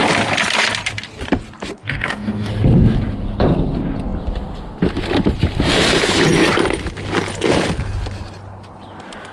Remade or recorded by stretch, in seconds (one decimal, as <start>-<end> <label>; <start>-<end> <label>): 0.0-1.8 recorded; 1.8-2.5 remade; 2.5-9.3 recorded